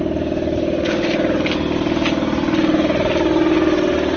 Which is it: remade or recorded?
recorded